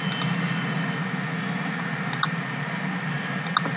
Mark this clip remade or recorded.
recorded